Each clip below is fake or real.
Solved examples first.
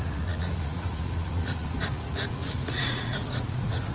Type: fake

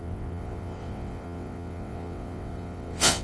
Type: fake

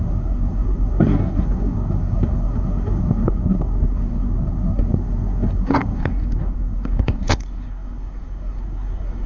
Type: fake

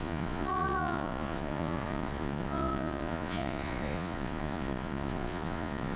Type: fake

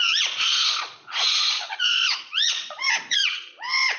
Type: fake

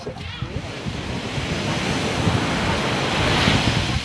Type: real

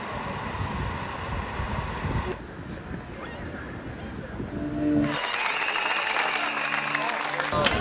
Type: real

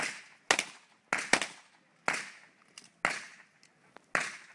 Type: real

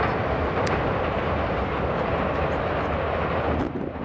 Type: real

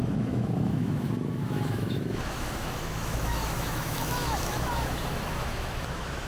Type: fake